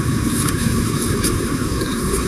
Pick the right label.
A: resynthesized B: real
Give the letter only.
A